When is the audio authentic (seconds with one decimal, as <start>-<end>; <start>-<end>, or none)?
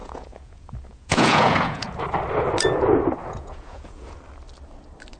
1.9-3.2; 4.2-5.2